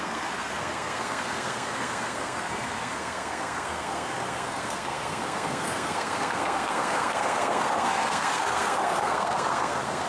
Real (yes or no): no